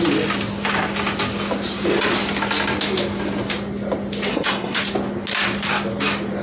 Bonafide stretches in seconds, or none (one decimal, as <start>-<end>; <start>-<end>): 0.0-4.3; 4.8-6.4